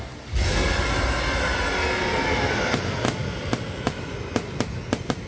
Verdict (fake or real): real